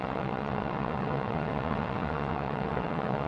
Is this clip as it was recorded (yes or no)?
no